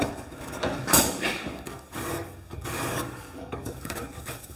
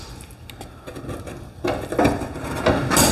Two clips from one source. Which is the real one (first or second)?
second